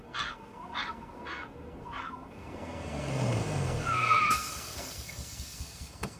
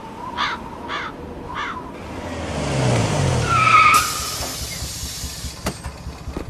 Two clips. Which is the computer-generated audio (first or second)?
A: first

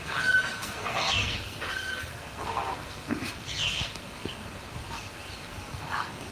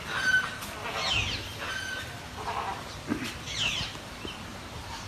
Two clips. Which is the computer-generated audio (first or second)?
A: first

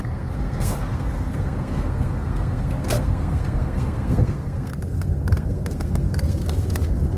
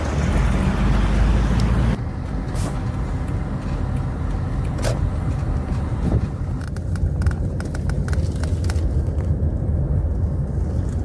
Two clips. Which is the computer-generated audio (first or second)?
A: first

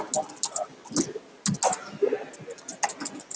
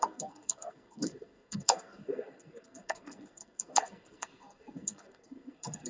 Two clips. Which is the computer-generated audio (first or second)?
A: second